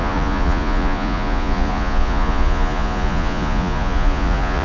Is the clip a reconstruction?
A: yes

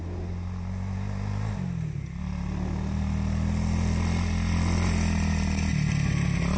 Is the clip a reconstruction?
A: no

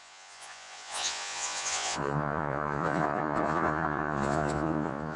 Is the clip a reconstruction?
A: yes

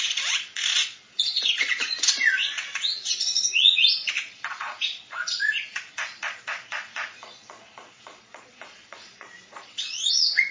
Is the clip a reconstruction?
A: yes